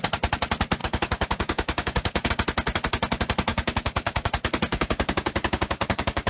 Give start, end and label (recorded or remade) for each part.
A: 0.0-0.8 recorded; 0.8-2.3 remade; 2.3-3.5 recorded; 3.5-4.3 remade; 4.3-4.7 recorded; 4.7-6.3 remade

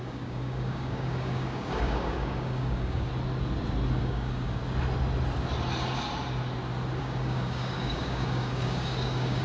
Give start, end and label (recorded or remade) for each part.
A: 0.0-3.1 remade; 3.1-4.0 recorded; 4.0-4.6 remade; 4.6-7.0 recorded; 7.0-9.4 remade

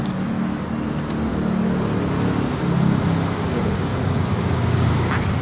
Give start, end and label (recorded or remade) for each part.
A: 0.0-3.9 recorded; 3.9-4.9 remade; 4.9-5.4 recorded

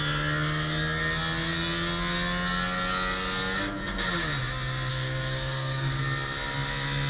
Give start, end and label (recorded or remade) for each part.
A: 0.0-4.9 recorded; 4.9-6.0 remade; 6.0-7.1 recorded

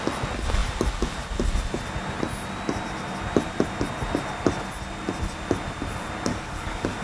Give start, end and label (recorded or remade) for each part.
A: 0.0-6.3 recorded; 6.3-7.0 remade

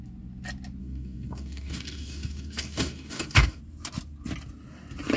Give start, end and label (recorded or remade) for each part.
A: 0.0-0.8 recorded; 0.8-3.6 remade; 3.6-5.2 recorded

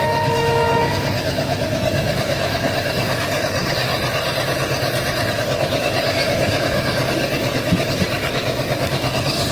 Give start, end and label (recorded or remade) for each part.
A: 0.0-3.9 remade; 3.9-5.3 recorded; 5.3-9.5 remade

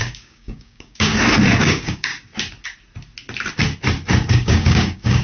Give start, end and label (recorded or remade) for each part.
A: 0.0-1.1 remade; 1.1-1.6 recorded; 1.6-2.1 remade; 2.1-4.3 recorded; 4.3-5.2 remade